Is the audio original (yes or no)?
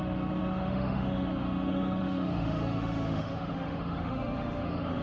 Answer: no